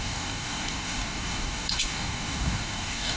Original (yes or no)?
no